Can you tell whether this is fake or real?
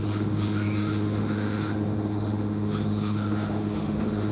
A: fake